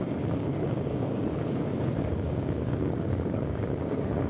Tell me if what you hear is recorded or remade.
remade